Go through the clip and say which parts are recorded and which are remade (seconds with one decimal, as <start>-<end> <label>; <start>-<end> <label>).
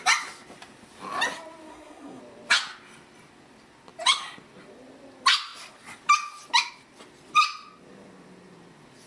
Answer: 0.0-1.7 recorded; 1.7-2.2 remade; 2.2-9.1 recorded